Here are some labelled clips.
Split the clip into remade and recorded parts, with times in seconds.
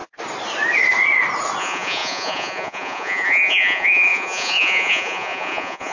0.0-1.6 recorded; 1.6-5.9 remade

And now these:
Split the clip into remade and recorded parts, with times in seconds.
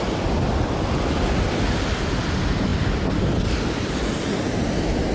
0.0-5.1 recorded